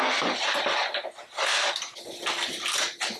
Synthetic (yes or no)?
no